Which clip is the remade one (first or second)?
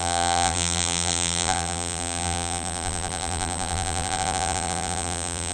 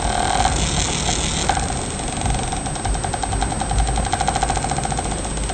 first